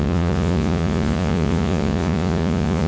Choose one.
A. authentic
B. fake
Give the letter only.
B